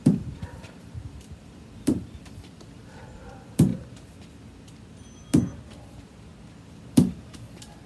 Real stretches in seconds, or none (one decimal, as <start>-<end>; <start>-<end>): 3.7-6.7